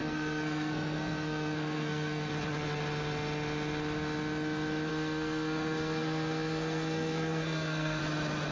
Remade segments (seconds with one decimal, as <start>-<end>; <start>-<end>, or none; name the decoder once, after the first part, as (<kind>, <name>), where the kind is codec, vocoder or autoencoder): 0.0-2.3 (codec, SNAC); 4.9-8.0